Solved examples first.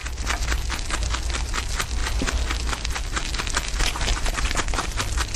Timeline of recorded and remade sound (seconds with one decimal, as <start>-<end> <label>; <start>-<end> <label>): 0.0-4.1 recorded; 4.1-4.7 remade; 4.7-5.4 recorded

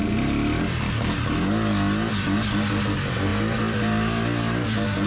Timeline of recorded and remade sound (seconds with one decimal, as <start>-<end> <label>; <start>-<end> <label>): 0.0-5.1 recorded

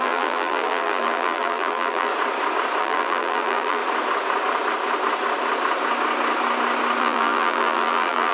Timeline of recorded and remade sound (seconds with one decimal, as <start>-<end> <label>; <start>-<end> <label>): 0.0-2.1 remade; 2.1-2.8 recorded; 2.8-3.8 remade; 3.8-7.0 recorded; 7.0-8.3 remade

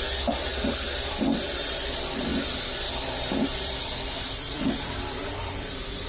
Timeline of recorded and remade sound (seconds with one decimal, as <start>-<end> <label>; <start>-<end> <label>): 0.0-2.3 recorded; 2.3-6.1 remade

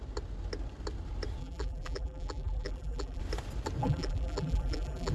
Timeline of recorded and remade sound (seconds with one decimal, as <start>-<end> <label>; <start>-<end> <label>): 0.0-1.4 recorded; 1.4-3.2 remade; 3.2-3.8 recorded; 3.8-5.1 remade